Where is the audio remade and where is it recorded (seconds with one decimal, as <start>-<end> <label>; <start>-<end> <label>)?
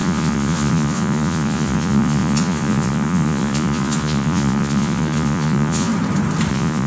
0.0-5.9 remade; 5.9-6.5 recorded; 6.5-6.9 remade